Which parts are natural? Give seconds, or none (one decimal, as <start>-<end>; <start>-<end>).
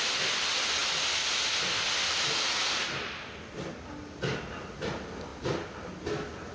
0.0-6.5